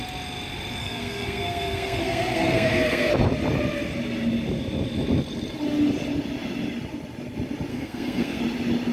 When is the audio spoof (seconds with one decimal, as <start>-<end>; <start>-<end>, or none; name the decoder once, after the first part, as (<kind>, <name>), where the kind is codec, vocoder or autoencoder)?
0.8-3.1 (codec, SNAC); 7.7-8.4